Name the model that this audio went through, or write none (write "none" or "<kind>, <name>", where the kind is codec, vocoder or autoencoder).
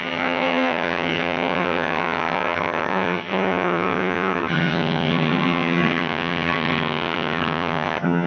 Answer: vocoder, HiFi-GAN